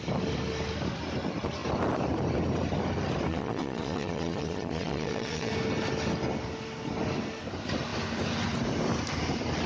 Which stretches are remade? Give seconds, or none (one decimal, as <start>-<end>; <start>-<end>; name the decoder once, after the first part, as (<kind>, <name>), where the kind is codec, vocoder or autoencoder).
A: 3.3-5.5 (vocoder, Vocos)